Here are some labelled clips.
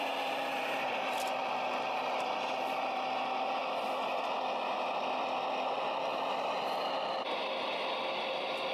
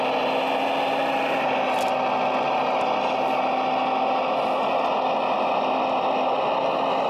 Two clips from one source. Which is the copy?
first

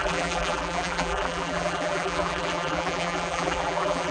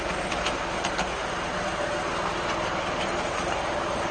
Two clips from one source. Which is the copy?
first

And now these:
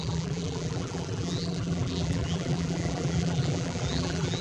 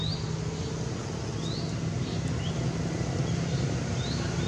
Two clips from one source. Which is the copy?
first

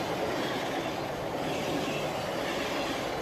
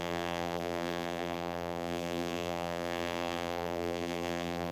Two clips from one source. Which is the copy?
second